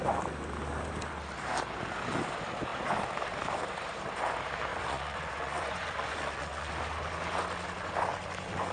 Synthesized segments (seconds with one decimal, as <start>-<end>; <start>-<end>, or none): 4.7-6.7